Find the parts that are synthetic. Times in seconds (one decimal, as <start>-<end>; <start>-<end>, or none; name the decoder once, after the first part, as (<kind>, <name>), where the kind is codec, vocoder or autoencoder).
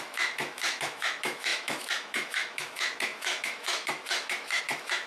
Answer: 0.0-5.1 (autoencoder, DAC-VAE)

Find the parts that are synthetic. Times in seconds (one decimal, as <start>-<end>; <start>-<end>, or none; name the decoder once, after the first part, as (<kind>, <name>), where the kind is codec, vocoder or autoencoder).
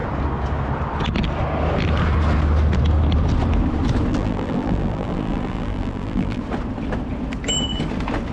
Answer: 4.1-6.4 (vocoder, BigVGAN v2)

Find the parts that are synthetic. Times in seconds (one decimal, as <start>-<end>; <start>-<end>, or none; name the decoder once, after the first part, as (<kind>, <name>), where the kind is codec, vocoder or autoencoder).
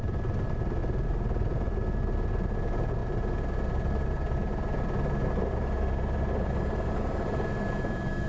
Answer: 0.0-0.8 (vocoder, BigVGAN v2); 2.6-3.0; 7.3-8.3